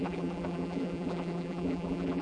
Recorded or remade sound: remade